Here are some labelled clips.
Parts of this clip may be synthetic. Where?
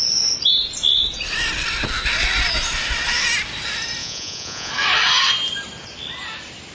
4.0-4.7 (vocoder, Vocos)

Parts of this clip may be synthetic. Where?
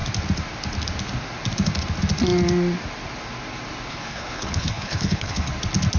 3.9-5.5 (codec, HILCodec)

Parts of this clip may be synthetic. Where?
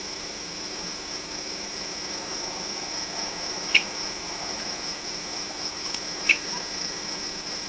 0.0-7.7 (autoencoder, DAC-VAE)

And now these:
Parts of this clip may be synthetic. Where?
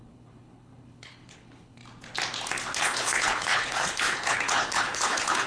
0.0-1.8 (codec, HILCodec); 2.8-5.5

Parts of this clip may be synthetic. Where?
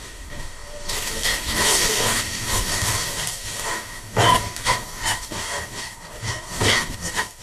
0.0-7.4 (codec, DAC)